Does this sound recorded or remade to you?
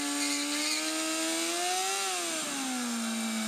recorded